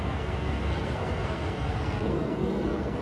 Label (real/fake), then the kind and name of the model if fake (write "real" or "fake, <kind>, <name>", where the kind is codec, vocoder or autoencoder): fake, codec, SNAC